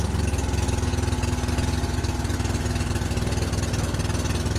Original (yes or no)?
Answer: yes